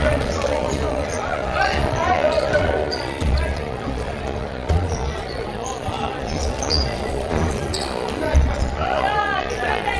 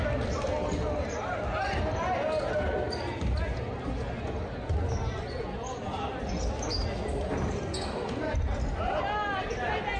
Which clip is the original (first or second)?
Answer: second